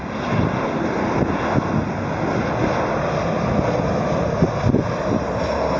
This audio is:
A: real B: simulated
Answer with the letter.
A